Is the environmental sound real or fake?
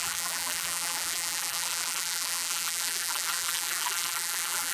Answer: fake